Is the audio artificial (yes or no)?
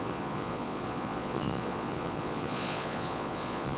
yes